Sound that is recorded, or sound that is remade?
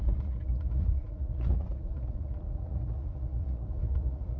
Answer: remade